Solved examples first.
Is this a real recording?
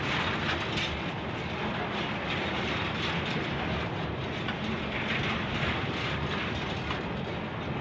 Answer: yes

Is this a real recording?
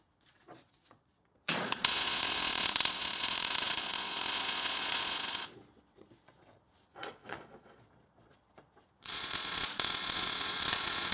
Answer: no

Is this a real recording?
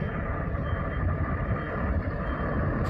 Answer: yes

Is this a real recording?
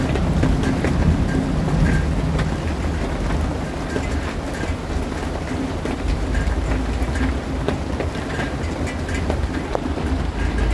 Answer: yes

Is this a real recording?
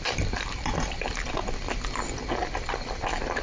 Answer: yes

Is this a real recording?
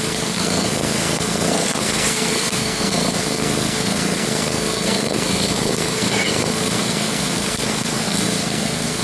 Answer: no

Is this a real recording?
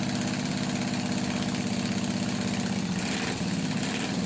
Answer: yes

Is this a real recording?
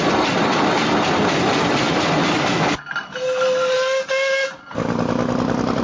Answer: yes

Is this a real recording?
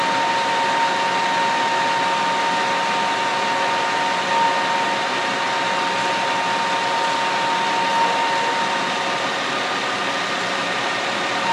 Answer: yes